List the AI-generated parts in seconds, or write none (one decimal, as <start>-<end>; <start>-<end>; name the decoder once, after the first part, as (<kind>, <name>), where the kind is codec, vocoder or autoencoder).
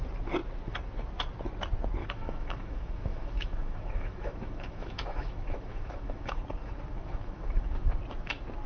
2.0-6.4 (autoencoder, DAC-VAE); 7.0-8.0